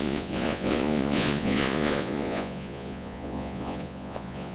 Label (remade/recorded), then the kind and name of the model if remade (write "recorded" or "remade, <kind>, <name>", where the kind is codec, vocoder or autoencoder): remade, vocoder, Vocos